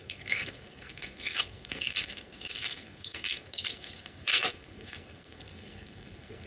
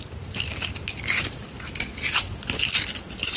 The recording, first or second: second